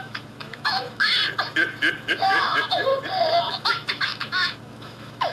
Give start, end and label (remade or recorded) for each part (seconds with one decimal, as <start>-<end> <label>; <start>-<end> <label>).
0.0-1.2 remade; 1.2-2.1 recorded; 2.1-2.9 remade; 2.9-3.5 recorded; 3.5-5.3 remade